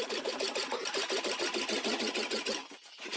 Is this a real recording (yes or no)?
yes